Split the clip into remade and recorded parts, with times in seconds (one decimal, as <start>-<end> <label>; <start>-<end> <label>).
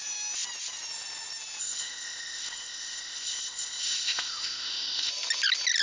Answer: 0.0-1.6 recorded; 1.6-5.1 remade; 5.1-5.8 recorded